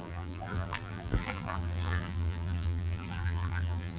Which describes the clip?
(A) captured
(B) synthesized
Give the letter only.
B